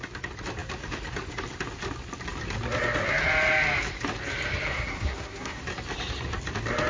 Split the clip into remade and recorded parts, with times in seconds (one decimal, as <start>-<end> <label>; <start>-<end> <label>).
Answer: 0.0-4.7 recorded; 4.7-5.6 remade; 5.6-6.9 recorded